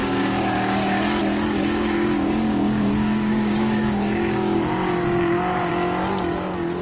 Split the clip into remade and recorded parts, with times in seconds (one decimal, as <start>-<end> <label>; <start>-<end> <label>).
0.0-1.2 remade; 1.2-1.6 recorded; 1.6-5.7 remade; 5.7-6.8 recorded